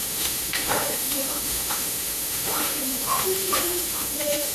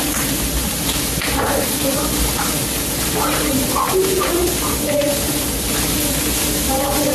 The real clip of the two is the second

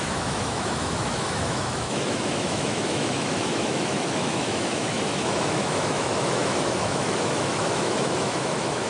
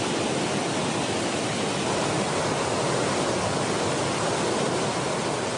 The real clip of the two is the second